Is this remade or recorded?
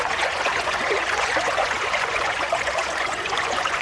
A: remade